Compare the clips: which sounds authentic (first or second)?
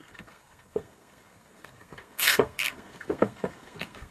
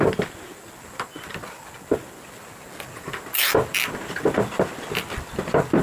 second